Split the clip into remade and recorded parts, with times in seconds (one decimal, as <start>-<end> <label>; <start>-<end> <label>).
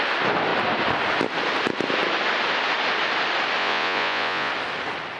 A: 0.0-3.6 recorded; 3.6-4.5 remade; 4.5-5.2 recorded